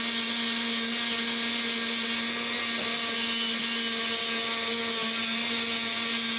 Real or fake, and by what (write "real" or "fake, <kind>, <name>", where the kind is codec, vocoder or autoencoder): real